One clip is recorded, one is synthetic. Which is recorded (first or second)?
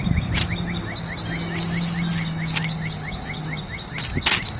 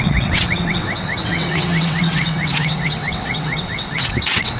first